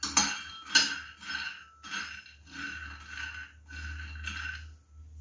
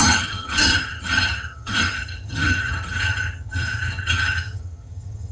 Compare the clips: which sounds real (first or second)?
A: first